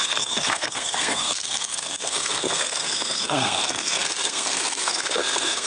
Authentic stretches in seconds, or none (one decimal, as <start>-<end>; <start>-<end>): none